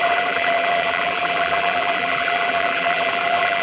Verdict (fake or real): fake